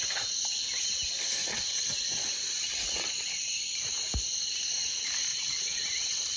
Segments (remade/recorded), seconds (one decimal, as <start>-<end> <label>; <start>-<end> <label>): 0.0-1.4 recorded; 1.4-1.9 remade; 1.9-5.3 recorded; 5.3-6.4 remade

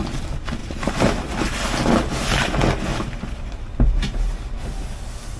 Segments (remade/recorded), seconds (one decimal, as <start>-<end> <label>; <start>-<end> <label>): 0.0-0.6 recorded; 0.6-1.4 remade; 1.4-2.9 recorded; 2.9-4.3 remade; 4.3-5.4 recorded

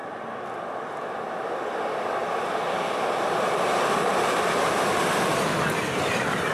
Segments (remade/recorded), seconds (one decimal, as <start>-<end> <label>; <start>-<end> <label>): 0.0-0.5 recorded; 0.5-6.5 remade

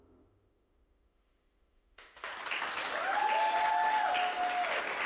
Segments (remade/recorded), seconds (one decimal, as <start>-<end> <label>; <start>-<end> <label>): 0.0-2.3 remade; 2.3-5.1 recorded

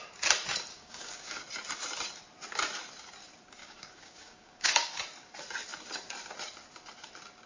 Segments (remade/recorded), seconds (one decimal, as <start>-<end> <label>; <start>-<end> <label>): 0.0-0.7 recorded; 0.7-1.4 remade; 1.4-3.6 recorded; 3.6-5.0 remade; 5.0-7.5 recorded